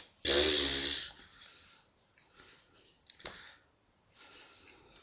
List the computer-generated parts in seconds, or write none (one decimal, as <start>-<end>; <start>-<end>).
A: none